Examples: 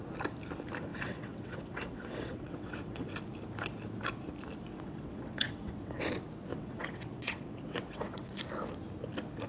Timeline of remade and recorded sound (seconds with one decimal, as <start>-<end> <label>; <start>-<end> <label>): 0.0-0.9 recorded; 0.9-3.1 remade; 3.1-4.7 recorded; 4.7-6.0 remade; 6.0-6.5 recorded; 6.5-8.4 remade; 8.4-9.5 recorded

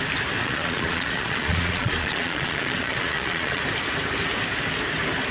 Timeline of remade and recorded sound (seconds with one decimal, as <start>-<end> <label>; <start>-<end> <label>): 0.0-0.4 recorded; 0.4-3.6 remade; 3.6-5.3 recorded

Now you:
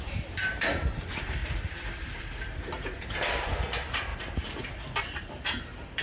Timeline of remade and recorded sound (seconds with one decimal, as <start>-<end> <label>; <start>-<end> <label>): 0.0-1.4 remade; 1.4-2.2 recorded; 2.2-6.0 remade

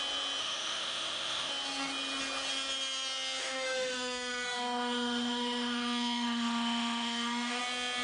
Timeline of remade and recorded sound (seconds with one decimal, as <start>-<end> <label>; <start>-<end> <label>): 0.0-0.4 recorded; 0.4-1.5 remade; 1.5-3.4 recorded; 3.4-7.6 remade; 7.6-8.0 recorded